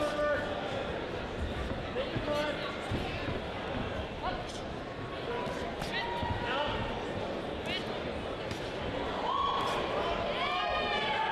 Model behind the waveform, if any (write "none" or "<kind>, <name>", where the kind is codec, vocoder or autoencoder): none